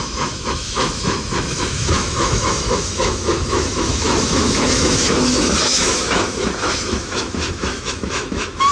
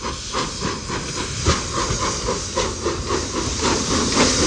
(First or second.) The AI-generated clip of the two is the first